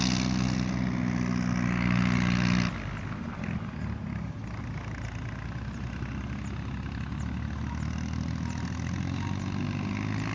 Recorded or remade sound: recorded